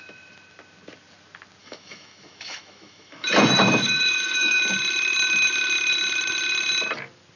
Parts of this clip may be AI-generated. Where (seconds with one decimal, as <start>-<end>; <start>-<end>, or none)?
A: 1.6-4.6